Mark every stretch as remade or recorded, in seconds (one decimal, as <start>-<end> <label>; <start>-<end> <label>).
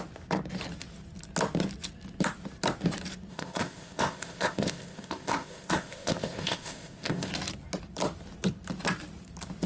0.0-3.3 recorded; 3.3-7.3 remade; 7.3-9.7 recorded